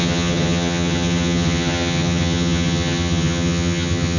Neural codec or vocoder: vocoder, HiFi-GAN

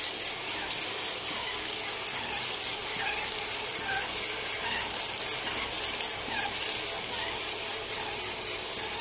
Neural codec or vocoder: none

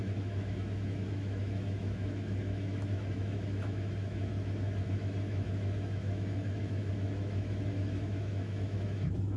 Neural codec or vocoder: autoencoder, DAC-VAE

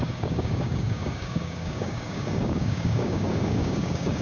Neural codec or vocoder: codec, DAC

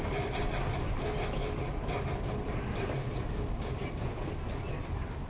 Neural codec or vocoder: none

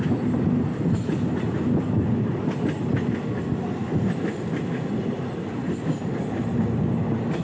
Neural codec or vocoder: none